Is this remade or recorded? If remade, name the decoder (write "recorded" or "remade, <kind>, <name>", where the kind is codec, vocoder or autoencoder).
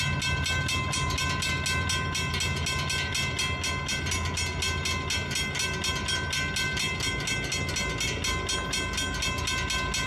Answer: recorded